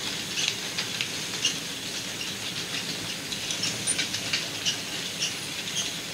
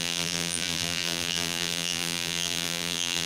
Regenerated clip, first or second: second